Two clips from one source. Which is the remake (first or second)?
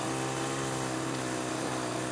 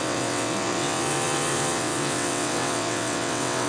second